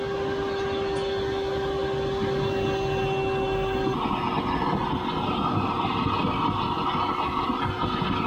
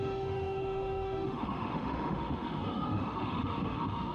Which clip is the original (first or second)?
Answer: first